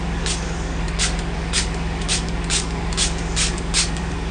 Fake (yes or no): yes